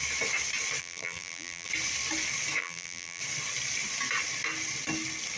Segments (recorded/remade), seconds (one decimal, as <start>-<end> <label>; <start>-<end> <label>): 0.0-0.8 recorded; 0.8-1.7 remade; 1.7-2.6 recorded; 2.6-3.2 remade; 3.2-5.4 recorded